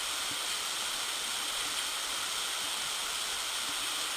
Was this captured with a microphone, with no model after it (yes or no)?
yes